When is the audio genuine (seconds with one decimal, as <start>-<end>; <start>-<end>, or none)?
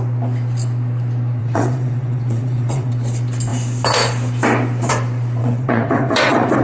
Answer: 0.0-1.4; 2.9-5.4